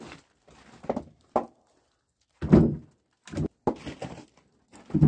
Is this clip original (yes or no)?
yes